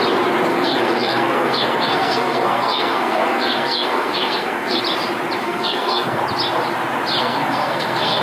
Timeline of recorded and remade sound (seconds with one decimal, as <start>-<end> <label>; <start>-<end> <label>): 0.0-0.5 recorded; 0.5-4.8 remade; 4.8-5.4 recorded; 5.4-6.2 remade; 6.2-7.2 recorded; 7.2-8.2 remade